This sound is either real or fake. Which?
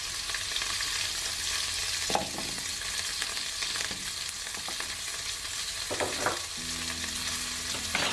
real